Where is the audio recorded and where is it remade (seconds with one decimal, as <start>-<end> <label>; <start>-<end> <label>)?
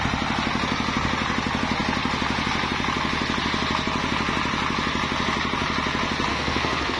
0.0-6.3 recorded; 6.3-7.0 remade